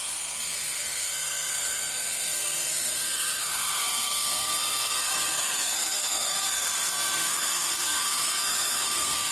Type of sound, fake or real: fake